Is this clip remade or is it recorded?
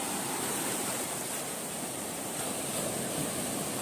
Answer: remade